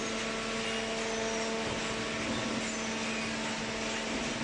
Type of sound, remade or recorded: recorded